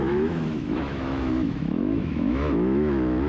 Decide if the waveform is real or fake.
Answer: fake